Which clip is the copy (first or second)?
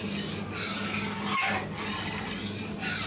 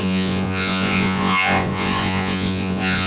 second